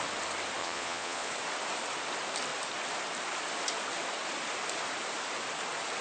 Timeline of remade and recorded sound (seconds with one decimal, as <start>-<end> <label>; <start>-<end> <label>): 0.0-0.6 recorded; 0.6-1.3 remade; 1.3-6.0 recorded